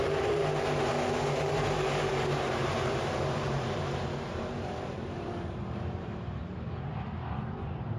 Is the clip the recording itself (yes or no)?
no